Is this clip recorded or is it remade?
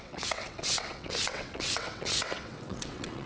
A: remade